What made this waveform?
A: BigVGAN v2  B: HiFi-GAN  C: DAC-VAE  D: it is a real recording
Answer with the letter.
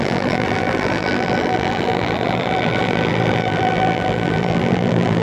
A